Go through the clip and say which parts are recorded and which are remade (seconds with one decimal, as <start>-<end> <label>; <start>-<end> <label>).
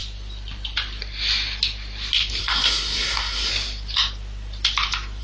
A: 0.0-2.4 recorded; 2.4-3.5 remade; 3.5-5.2 recorded